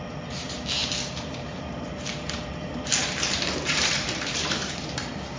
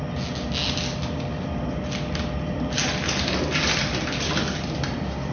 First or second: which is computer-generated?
first